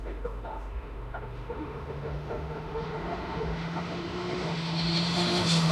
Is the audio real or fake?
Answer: fake